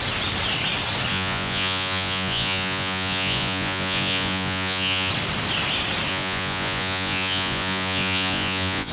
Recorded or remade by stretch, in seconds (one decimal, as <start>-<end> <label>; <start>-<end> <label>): 0.0-1.1 recorded; 1.1-5.1 remade; 5.1-6.1 recorded; 6.1-8.9 remade